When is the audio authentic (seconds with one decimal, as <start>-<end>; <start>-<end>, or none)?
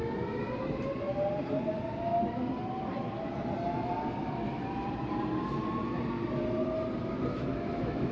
0.0-7.3